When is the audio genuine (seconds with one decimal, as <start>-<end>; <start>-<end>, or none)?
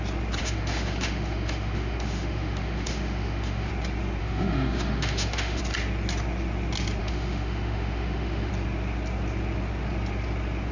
0.0-0.4; 3.7-4.2; 5.6-7.0; 8.5-10.7